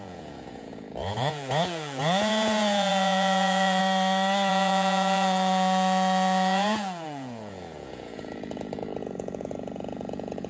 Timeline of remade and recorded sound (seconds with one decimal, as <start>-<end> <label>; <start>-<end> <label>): 0.0-3.8 remade; 3.8-4.5 recorded; 4.5-10.5 remade